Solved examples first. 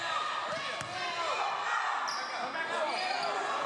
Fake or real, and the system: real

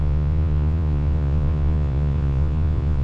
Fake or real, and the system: fake, vocoder, Vocos